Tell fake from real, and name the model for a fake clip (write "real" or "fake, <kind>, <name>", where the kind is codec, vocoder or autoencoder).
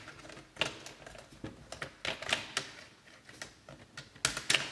real